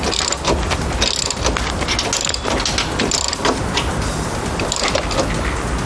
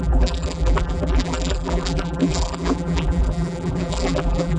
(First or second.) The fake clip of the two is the second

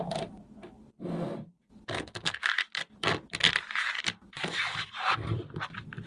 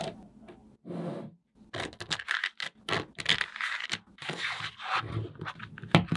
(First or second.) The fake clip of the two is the first